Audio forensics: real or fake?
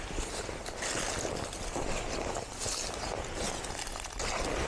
real